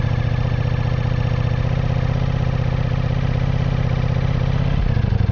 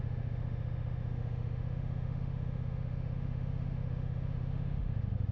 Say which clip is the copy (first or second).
second